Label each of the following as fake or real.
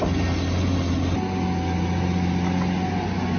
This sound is real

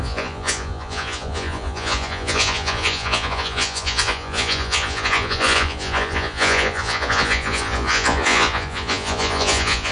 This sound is fake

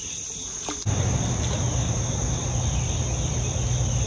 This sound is real